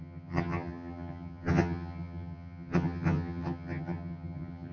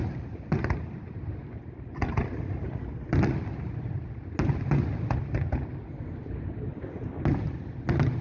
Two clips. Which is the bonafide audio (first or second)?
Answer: second